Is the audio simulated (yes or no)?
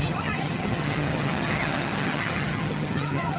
yes